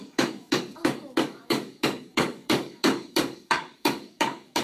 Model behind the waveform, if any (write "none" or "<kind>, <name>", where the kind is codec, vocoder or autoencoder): codec, DAC